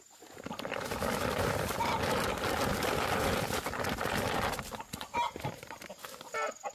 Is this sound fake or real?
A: real